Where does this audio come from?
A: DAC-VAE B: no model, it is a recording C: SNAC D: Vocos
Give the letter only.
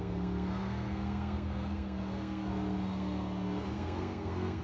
C